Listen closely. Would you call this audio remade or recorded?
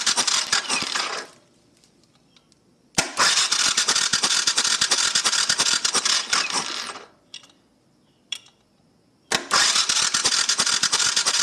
remade